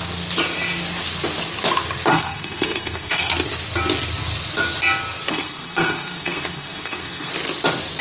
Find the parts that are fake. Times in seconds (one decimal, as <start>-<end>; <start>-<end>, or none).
2.1-3.3; 5.3-7.3